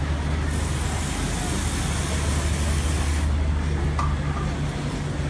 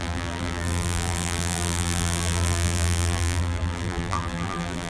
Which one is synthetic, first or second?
second